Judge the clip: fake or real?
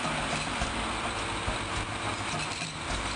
fake